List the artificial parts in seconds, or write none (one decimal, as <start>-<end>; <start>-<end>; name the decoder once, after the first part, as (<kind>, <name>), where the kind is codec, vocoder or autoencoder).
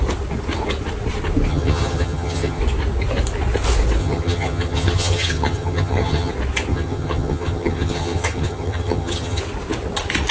1.5-2.6 (vocoder, HiFi-GAN); 4.0-6.3; 6.7-9.4